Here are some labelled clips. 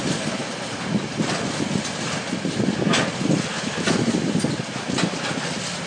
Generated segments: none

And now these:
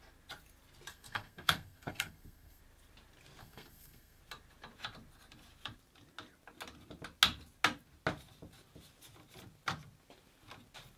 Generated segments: 0.9-2.6 (codec, SNAC); 3.4-4.2